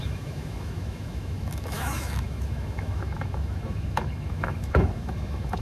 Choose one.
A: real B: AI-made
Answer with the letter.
B